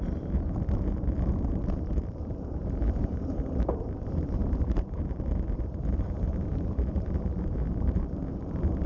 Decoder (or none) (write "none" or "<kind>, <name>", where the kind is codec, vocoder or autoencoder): vocoder, BigVGAN v2